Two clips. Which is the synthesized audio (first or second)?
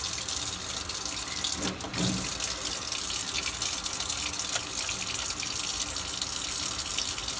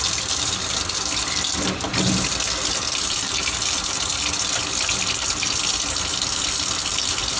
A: second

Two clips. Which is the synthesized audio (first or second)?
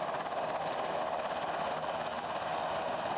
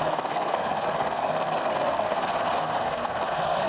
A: second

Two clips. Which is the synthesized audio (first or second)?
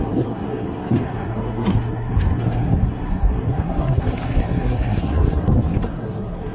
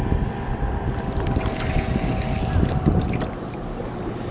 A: first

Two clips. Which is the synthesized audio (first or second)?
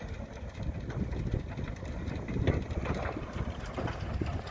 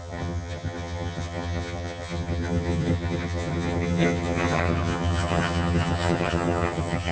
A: second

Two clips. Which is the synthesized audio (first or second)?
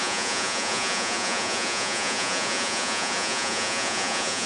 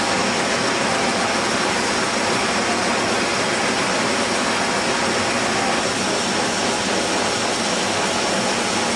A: first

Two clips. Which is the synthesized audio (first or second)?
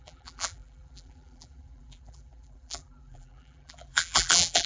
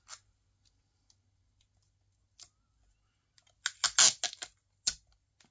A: first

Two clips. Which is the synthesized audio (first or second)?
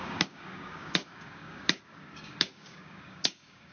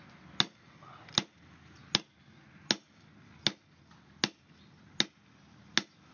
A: first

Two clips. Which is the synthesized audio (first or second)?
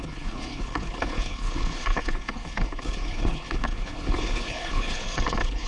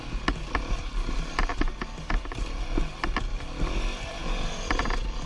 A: first